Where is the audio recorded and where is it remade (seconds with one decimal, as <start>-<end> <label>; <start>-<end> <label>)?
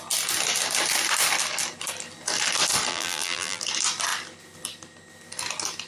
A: 0.0-2.9 recorded; 2.9-3.6 remade; 3.6-5.9 recorded